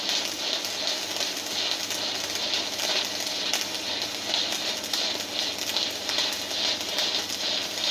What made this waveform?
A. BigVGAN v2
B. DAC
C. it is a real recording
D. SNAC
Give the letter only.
C